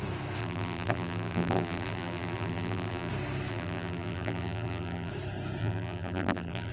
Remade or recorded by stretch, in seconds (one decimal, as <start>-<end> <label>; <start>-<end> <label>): 0.0-0.4 recorded; 0.4-3.1 remade; 3.1-3.5 recorded; 3.5-5.1 remade; 5.1-5.6 recorded; 5.6-6.7 remade